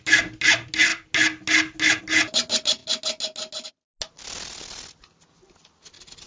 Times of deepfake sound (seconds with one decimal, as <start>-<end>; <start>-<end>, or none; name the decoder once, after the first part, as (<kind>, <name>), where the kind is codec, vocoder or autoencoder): none